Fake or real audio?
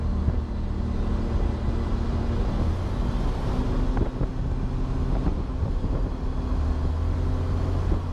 real